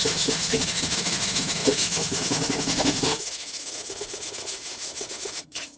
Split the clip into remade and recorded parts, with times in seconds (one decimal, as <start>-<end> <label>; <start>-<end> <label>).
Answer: 0.0-5.8 remade